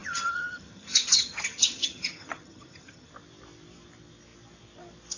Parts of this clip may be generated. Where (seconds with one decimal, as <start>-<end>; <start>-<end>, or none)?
0.0-3.1

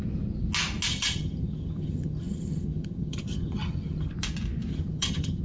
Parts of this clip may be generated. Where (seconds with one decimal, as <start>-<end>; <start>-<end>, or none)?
0.9-4.1; 4.7-5.4

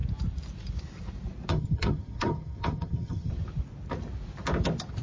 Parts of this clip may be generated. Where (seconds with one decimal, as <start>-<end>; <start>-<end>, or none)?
1.5-3.3

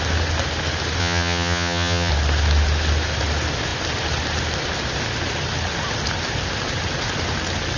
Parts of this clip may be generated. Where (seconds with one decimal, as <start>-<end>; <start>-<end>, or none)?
1.0-2.1

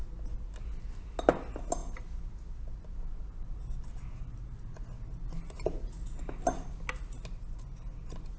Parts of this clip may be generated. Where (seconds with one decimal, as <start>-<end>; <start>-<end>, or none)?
none

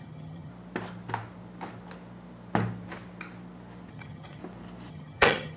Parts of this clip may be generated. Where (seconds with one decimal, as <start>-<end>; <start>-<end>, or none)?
0.0-0.5; 3.9-4.4; 4.9-5.6